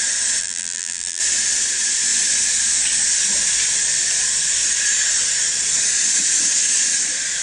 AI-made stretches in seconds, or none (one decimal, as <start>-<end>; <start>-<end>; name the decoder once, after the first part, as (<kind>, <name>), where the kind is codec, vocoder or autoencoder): 0.4-1.2 (vocoder, BigVGAN v2)

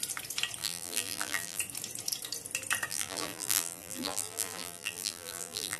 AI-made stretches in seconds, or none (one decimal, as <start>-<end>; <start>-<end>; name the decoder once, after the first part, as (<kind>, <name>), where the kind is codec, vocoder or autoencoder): 0.6-1.6 (vocoder, BigVGAN v2); 2.9-5.8

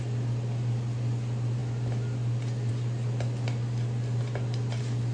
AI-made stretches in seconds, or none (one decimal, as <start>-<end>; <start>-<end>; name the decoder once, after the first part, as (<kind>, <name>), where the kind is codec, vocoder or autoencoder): none

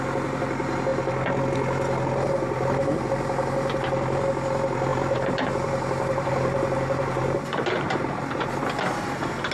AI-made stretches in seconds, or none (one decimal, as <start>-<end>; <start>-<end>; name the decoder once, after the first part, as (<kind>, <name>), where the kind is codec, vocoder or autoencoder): 4.9-8.6 (vocoder, BigVGAN v2)

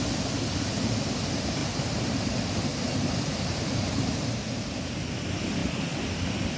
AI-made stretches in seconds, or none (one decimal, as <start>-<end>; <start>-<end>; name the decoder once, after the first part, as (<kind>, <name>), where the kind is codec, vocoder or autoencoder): 1.6-2.3 (vocoder, BigVGAN v2); 2.7-4.8

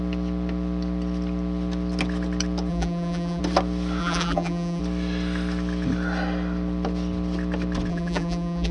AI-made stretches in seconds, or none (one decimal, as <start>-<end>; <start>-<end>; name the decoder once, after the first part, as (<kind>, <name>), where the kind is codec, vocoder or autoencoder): 2.7-3.4 (vocoder, BigVGAN v2); 4.0-4.8; 7.9-8.7